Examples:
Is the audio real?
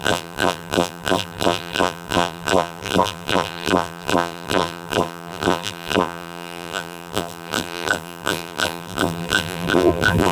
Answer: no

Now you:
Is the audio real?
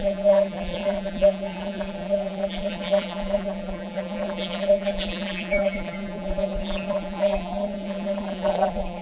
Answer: no